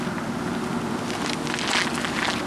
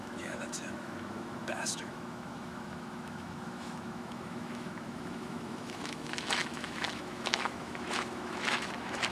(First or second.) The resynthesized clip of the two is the second